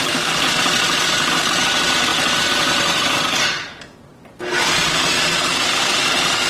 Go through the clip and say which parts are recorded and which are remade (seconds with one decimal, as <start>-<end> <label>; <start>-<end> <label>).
0.0-6.5 recorded